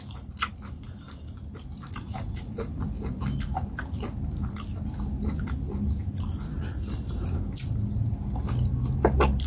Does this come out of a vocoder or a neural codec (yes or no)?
no